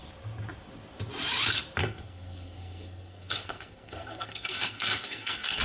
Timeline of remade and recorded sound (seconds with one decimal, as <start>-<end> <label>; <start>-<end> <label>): 0.0-1.8 recorded; 1.8-5.6 remade